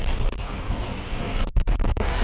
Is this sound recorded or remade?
remade